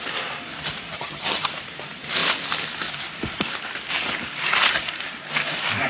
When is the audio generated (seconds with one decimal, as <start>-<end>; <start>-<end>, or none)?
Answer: 0.9-1.5